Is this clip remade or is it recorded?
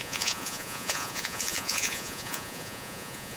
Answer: remade